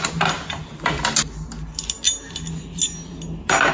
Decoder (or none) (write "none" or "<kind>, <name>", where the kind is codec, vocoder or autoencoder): none